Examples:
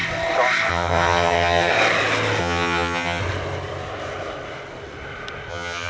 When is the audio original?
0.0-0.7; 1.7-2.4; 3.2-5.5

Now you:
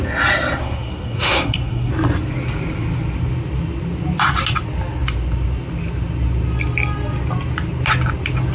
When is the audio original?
0.0-0.6; 1.9-8.5

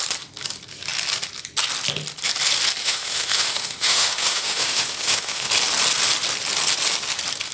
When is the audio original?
0.0-2.8; 5.5-7.5

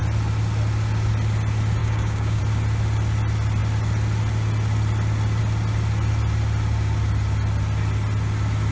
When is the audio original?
0.0-1.8; 2.4-8.7

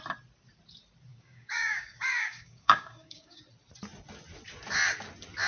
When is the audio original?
0.0-1.1; 3.4-5.5

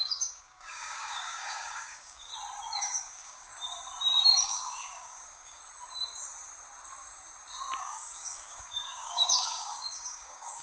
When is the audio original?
2.3-2.8; 3.5-4.4; 5.6-7.8